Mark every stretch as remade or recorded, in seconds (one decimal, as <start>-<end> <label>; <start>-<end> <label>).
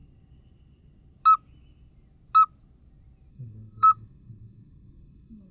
0.0-3.3 recorded; 3.3-5.5 remade